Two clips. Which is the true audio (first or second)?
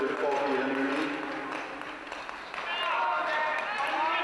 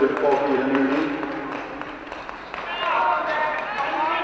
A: first